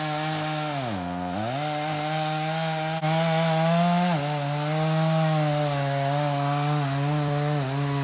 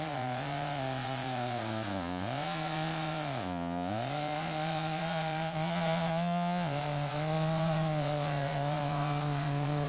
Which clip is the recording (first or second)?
first